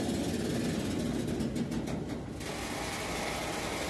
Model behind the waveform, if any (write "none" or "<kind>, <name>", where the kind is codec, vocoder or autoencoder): none